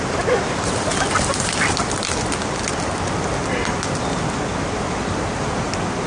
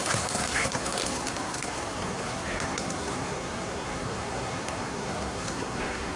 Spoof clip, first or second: second